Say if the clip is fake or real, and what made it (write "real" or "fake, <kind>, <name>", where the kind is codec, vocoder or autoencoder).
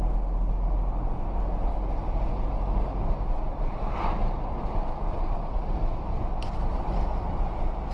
real